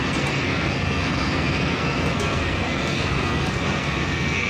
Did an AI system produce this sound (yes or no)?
yes